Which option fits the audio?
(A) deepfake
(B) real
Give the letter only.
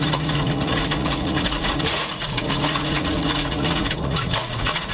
A